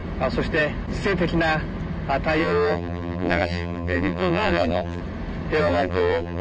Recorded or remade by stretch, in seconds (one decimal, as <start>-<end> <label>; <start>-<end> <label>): 0.0-2.4 recorded; 2.4-5.0 remade; 5.0-5.6 recorded; 5.6-6.4 remade